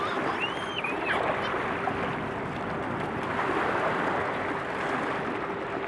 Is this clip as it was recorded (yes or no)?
yes